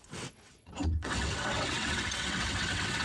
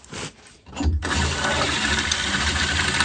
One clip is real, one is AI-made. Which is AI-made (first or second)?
first